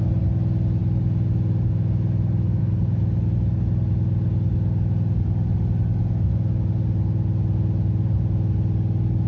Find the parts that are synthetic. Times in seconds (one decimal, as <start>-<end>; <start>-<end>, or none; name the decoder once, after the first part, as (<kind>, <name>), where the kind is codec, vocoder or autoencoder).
none